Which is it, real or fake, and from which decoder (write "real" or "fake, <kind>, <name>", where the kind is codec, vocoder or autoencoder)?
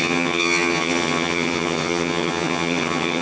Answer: fake, vocoder, HiFi-GAN